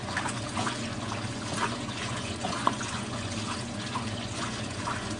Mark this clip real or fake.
fake